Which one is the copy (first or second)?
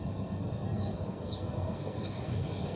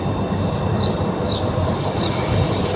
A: first